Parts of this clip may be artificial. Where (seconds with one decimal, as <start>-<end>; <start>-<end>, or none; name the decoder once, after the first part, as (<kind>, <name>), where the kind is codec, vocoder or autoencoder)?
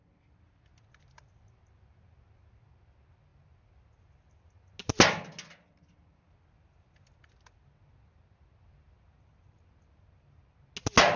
none